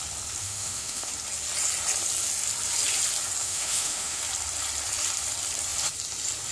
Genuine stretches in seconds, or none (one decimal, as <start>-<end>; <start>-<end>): 0.0-0.4; 1.1-3.4; 4.2-6.5